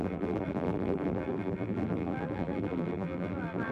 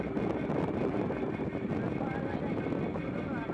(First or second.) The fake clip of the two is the first